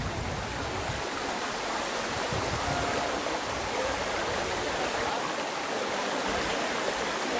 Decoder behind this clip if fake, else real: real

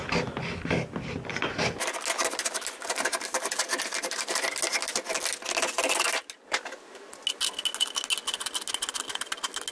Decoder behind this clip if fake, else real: real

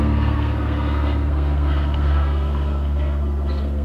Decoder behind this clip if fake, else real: fake, codec, SNAC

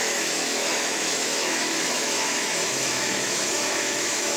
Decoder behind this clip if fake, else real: fake, autoencoder, DAC-VAE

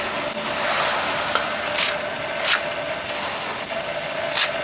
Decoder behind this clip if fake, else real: real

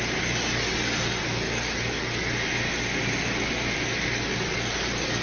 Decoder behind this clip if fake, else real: real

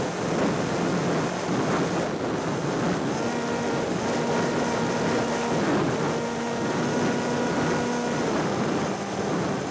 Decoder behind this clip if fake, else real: real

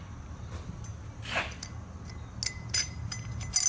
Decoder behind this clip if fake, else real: real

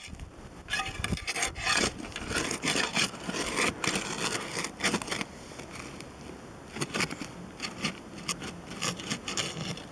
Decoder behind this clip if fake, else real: real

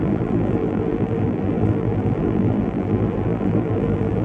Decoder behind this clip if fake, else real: fake, vocoder, BigVGAN v2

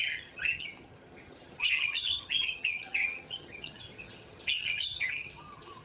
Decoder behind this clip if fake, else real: fake, vocoder, HiFi-GAN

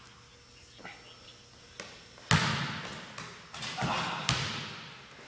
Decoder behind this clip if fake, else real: real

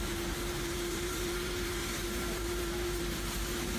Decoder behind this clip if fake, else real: fake, vocoder, BigVGAN v2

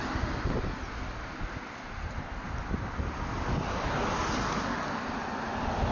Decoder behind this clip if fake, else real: real